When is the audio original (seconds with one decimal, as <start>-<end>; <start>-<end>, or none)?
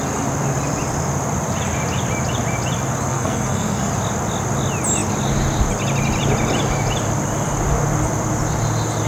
0.0-3.1; 3.9-9.1